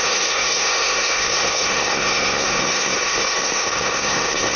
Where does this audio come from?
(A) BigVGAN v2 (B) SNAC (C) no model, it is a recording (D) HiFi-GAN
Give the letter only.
B